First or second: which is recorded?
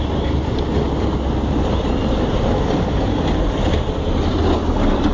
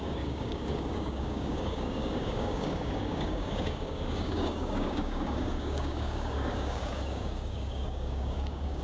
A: first